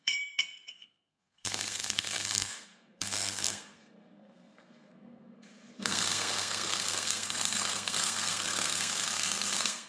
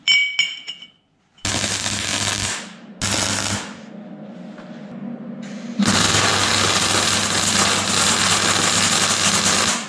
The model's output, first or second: first